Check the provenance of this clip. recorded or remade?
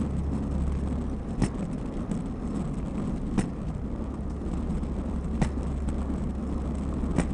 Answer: recorded